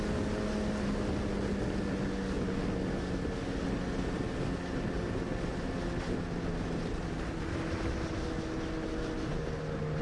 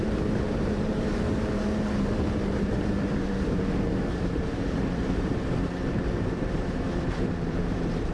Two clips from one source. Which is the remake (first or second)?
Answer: second